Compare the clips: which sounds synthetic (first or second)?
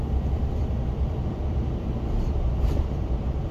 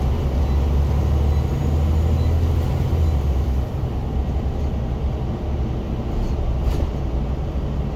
first